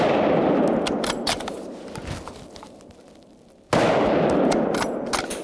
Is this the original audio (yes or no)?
yes